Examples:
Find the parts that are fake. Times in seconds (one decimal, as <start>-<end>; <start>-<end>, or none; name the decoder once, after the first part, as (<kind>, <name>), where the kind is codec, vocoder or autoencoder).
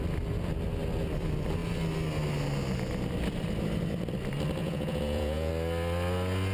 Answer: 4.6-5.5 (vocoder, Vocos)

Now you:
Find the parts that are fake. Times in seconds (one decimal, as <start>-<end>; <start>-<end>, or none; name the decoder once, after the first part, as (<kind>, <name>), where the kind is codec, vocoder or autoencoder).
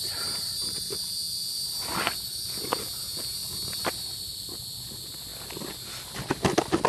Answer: none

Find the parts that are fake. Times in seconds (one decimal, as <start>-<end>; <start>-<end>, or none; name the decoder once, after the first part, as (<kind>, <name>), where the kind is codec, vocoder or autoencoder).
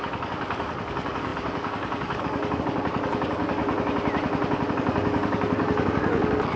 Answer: 0.0-3.6 (codec, DAC); 4.7-6.6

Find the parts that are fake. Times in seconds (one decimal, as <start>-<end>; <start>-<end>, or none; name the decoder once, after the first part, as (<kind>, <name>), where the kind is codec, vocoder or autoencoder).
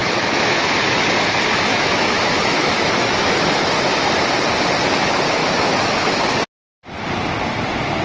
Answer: 0.0-0.6 (autoencoder, DAC-VAE); 1.7-3.7; 5.4-6.4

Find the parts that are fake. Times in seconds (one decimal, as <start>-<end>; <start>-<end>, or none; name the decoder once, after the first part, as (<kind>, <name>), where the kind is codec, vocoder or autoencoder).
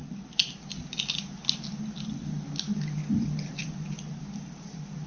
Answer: none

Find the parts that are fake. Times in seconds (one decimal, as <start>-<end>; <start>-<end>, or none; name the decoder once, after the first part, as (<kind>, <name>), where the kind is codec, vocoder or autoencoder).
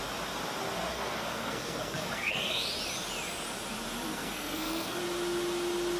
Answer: 0.9-2.7 (codec, SNAC); 4.1-5.0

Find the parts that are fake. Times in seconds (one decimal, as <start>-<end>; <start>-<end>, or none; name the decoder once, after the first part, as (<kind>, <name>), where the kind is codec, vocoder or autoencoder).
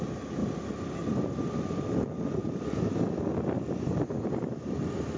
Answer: none